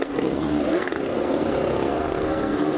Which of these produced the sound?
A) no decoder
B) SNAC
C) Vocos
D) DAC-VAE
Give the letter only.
B